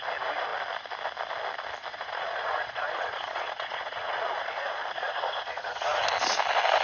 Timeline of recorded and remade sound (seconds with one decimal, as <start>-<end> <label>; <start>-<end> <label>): 0.0-1.9 recorded; 1.9-6.0 remade; 6.0-6.8 recorded